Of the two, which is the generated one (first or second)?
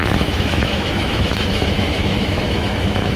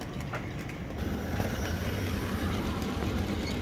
first